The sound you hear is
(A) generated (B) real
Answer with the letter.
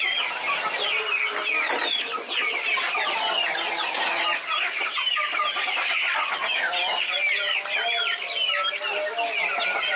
B